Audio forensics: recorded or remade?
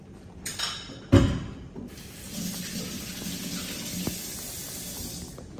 recorded